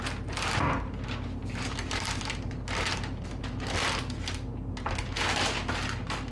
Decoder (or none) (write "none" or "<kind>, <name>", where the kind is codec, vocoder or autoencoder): none